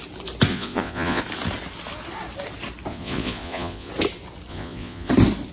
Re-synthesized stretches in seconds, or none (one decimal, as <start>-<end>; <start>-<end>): 0.5-1.2; 2.9-3.9; 4.5-5.1